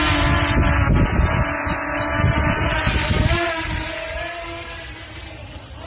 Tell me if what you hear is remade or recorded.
recorded